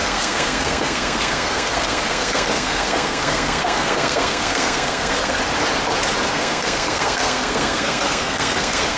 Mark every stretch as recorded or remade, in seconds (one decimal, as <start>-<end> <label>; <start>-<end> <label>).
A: 0.0-5.4 remade; 5.4-6.3 recorded; 6.3-9.0 remade